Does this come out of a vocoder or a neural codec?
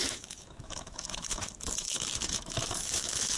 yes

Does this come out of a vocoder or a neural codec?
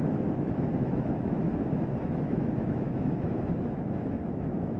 yes